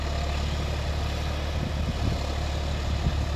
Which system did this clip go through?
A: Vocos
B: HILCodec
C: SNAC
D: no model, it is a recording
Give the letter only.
D